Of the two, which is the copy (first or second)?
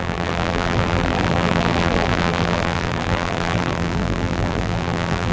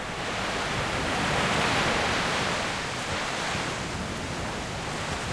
first